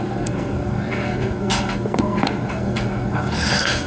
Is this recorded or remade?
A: remade